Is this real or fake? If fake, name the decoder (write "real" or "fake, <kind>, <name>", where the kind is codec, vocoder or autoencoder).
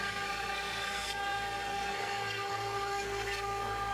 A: fake, codec, SNAC